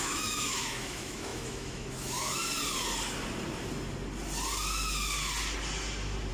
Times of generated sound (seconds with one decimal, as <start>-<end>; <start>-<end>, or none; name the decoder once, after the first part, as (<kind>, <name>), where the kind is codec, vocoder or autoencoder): 0.0-2.4 (autoencoder, DAC-VAE)